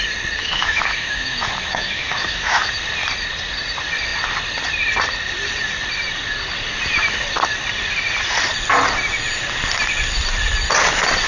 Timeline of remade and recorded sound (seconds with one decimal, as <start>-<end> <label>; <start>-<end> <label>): 0.0-0.4 recorded; 0.4-2.7 remade; 2.7-11.3 recorded